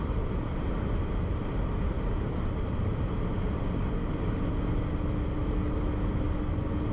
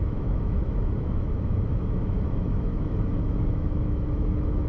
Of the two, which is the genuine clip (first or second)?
first